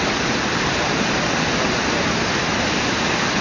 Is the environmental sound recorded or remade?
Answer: recorded